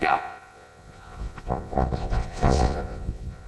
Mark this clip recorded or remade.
remade